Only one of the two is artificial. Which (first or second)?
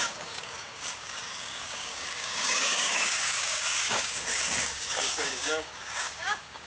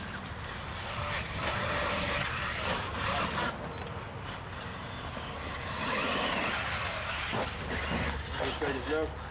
first